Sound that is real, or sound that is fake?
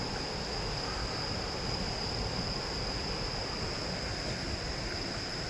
real